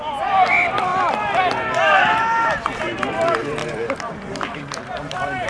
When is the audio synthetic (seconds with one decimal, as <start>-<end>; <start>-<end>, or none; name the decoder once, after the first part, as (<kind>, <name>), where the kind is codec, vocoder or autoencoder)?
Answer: 0.0-0.9 (vocoder, BigVGAN v2); 3.1-3.6; 4.1-5.5